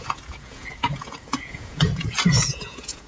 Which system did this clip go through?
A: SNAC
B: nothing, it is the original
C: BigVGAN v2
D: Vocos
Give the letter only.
D